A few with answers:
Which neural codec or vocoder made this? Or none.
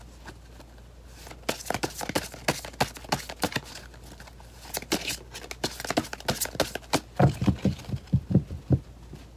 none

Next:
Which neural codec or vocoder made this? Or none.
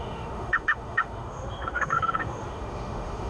autoencoder, DAC-VAE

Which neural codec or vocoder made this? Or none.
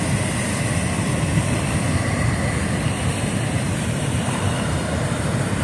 none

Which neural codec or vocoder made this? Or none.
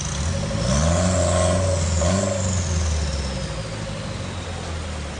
none